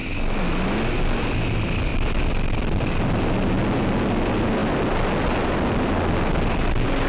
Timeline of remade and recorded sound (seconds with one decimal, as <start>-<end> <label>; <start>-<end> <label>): 0.0-7.1 recorded